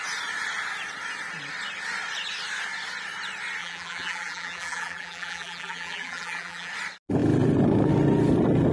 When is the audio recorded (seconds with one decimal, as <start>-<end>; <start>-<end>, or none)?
0.0-3.6; 6.7-8.7